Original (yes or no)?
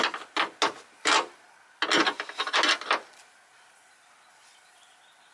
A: yes